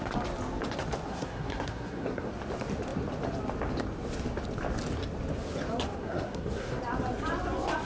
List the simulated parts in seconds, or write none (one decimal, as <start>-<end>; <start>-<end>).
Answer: 1.1-2.3; 6.0-6.8